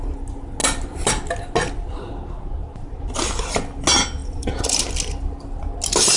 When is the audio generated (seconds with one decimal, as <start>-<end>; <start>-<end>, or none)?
0.6-1.1; 2.6-3.4; 4.2-4.9